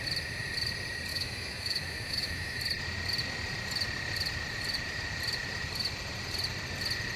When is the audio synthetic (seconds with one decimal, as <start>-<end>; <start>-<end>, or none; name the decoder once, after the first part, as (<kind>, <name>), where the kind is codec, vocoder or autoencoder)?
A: 1.1-2.6 (autoencoder, DAC-VAE)